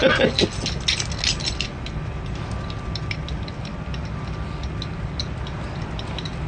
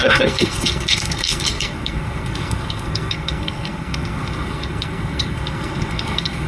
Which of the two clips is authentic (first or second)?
first